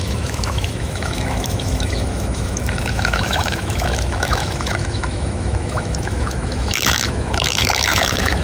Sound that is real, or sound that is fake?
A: fake